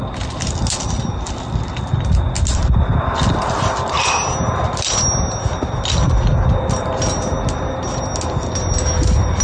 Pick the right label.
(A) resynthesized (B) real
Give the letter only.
B